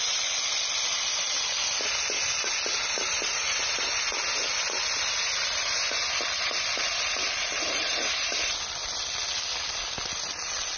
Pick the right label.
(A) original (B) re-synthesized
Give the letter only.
A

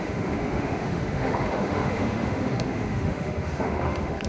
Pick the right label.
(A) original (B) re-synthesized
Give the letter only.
B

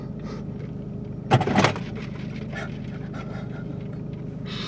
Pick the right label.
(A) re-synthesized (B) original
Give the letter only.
B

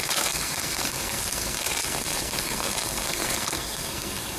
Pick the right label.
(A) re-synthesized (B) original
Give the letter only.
A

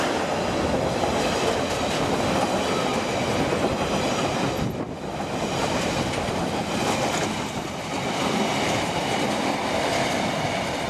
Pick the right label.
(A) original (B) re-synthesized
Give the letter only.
A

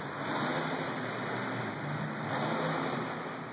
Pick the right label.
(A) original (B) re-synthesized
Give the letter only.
A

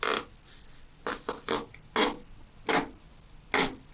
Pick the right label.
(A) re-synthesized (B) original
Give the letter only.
B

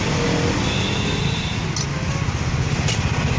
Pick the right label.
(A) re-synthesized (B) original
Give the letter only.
B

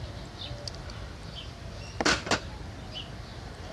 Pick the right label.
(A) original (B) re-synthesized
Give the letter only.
A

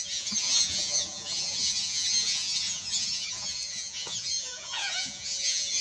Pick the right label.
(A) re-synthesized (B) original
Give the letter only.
A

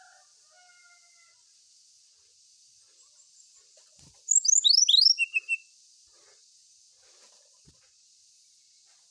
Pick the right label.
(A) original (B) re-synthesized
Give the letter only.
A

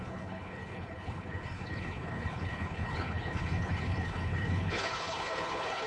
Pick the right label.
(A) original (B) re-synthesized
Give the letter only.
B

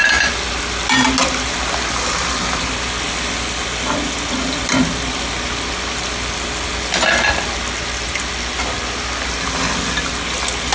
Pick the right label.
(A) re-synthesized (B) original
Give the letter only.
B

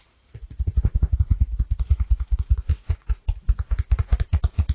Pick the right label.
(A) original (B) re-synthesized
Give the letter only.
B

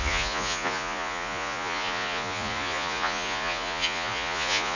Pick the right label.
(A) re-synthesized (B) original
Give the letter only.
A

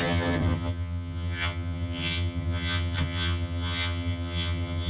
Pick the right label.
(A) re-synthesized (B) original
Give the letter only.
A